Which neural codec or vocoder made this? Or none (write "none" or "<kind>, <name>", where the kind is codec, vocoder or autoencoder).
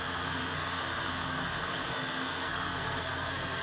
codec, SNAC